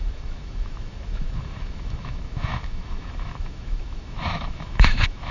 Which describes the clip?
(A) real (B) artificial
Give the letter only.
B